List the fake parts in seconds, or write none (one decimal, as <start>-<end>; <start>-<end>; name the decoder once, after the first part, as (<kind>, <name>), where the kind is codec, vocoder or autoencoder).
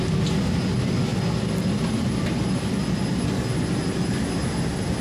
none